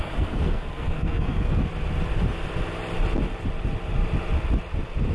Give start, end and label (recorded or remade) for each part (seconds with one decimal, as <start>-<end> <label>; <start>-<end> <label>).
0.0-1.6 remade; 1.6-5.1 recorded